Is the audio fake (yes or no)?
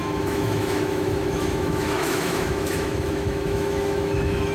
yes